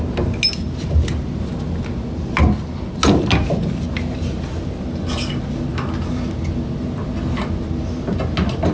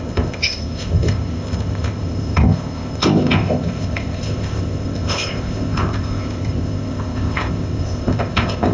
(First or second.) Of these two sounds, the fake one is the second